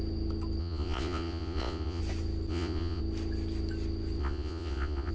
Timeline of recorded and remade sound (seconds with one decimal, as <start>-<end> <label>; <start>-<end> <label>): 0.0-0.6 recorded; 0.6-2.0 remade; 2.0-2.5 recorded; 2.5-3.0 remade; 3.0-4.2 recorded; 4.2-5.1 remade